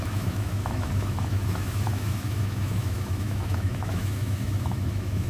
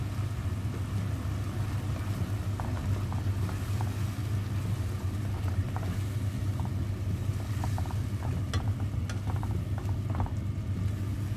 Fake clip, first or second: first